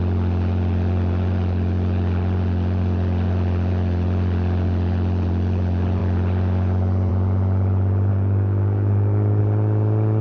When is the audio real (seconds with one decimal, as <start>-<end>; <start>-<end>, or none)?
0.0-8.1; 9.4-10.2